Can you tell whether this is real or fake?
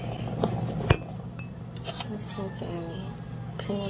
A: real